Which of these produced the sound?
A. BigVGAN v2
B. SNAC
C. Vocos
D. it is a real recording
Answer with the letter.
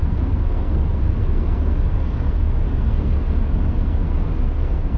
B